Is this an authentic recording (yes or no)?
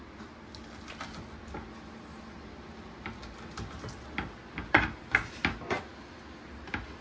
yes